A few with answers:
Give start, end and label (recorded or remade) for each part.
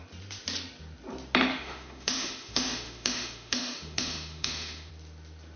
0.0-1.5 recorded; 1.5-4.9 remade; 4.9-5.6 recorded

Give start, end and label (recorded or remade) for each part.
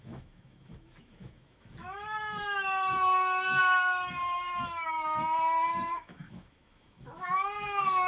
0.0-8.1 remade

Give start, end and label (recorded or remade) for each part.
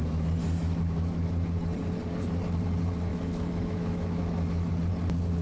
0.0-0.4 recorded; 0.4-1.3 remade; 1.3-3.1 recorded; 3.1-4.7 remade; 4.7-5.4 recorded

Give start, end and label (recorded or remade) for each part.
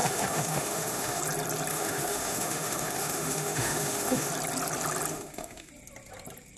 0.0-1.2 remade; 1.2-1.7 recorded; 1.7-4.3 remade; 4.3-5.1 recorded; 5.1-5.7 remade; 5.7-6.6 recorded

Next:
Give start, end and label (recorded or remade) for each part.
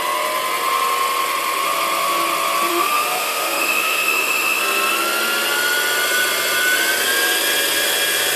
0.0-2.7 recorded; 2.7-4.6 remade; 4.6-8.4 recorded